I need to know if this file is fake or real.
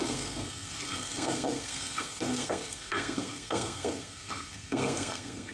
fake